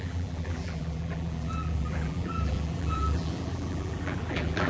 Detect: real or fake fake